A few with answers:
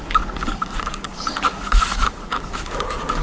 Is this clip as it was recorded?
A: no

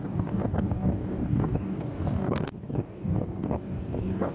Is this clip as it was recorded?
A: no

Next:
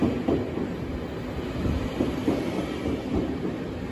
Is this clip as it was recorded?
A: yes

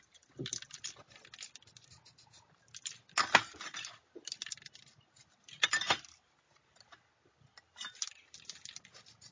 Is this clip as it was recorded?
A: yes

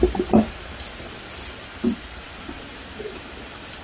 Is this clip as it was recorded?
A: yes